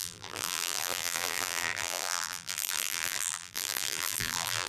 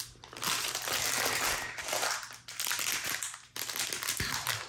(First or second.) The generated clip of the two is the first